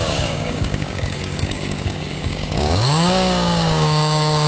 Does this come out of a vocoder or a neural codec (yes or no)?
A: yes